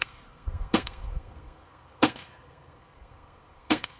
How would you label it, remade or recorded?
remade